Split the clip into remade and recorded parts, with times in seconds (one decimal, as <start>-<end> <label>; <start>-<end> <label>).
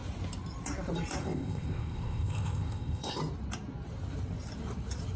0.0-1.2 recorded; 1.2-3.2 remade; 3.2-5.2 recorded